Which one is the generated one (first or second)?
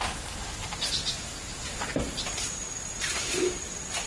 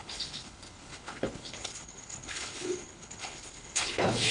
second